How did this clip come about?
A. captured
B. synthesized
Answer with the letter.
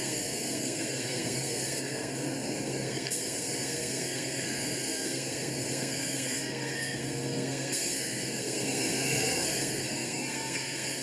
B